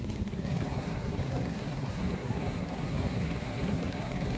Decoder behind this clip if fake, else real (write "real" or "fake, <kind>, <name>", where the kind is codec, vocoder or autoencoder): fake, codec, SNAC